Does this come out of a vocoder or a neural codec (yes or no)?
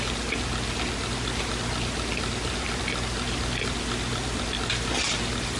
no